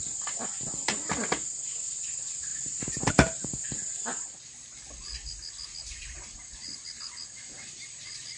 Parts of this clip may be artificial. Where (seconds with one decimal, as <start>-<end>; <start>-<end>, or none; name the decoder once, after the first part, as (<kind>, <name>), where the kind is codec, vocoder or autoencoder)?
2.5-3.1 (vocoder, BigVGAN v2)